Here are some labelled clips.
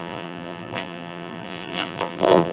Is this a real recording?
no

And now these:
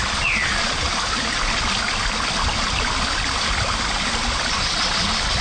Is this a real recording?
yes